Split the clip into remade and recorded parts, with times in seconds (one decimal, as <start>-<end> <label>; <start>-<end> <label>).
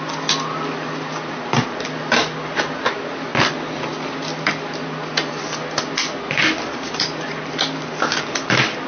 0.0-8.9 recorded